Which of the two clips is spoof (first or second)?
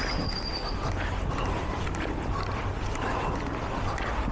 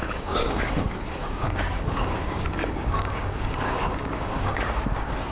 second